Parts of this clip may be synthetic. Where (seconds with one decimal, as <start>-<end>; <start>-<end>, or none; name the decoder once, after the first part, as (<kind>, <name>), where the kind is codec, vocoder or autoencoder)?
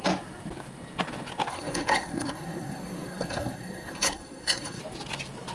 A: 1.5-4.8 (codec, SNAC)